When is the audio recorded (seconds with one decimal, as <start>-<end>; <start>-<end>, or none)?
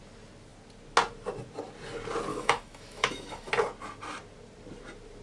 0.0-2.3; 3.5-5.2